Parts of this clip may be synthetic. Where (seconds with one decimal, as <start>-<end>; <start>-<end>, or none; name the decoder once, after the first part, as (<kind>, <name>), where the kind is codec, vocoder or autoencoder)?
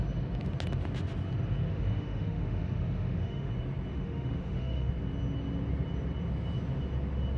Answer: 1.7-3.5 (autoencoder, DAC-VAE); 3.9-4.9